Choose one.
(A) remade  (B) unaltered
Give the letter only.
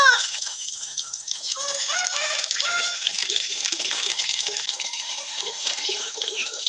A